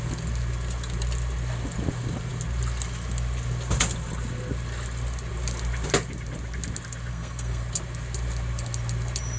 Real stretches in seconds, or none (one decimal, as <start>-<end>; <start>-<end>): 0.0-7.1; 7.6-9.4